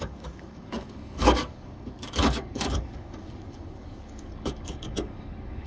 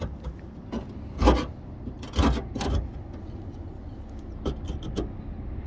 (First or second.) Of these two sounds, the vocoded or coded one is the first